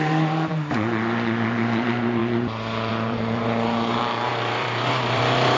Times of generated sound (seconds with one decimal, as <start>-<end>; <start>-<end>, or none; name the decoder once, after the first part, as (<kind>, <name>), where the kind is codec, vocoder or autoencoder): 0.0-2.2 (vocoder, BigVGAN v2); 2.9-5.6